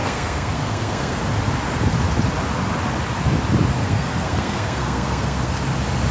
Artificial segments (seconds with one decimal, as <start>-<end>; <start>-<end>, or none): 0.0-1.2; 3.8-5.5